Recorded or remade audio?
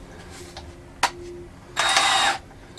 recorded